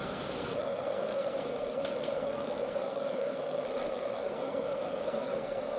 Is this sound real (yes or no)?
no